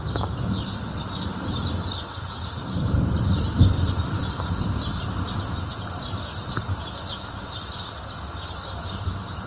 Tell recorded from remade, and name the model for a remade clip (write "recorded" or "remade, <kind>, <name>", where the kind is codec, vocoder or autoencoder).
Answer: remade, vocoder, BigVGAN v2